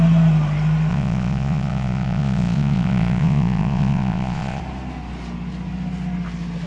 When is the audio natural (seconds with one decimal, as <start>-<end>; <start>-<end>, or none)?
0.0-0.9; 4.6-6.7